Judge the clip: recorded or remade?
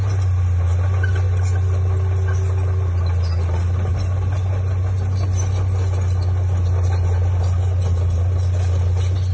recorded